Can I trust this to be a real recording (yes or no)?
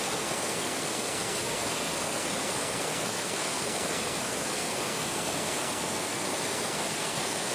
no